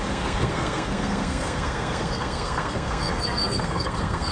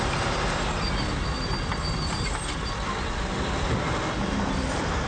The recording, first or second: second